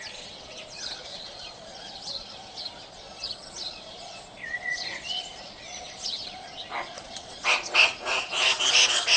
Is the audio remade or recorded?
remade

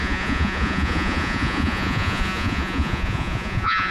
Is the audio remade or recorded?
remade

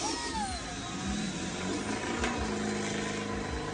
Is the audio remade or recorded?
recorded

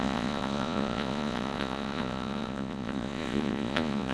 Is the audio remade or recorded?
remade